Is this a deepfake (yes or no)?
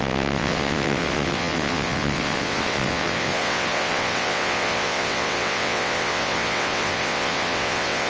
yes